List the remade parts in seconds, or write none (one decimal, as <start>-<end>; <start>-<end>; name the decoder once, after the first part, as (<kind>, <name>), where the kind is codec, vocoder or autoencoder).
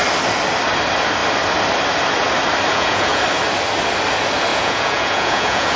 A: 2.7-3.2 (vocoder, Vocos); 4.5-5.8